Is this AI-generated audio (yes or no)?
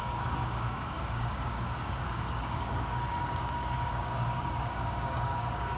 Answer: yes